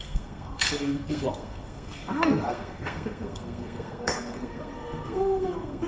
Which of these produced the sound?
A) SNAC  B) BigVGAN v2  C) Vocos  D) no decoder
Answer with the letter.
A